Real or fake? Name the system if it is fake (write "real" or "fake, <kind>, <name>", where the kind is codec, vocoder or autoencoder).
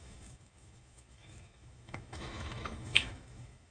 fake, autoencoder, DAC-VAE